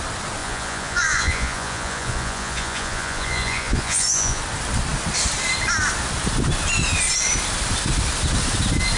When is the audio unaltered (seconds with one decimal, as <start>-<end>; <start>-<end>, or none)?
0.0-0.4; 4.4-9.0